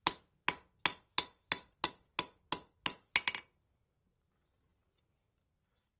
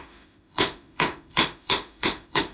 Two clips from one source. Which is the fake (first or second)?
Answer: second